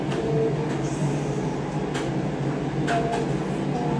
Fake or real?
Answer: real